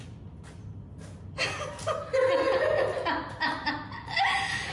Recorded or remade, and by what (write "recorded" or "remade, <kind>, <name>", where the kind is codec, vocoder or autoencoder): recorded